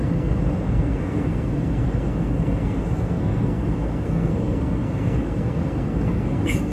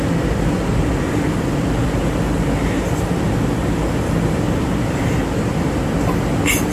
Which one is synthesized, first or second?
first